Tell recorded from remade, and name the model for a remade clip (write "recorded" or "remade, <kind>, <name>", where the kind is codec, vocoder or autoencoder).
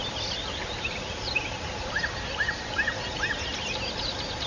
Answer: recorded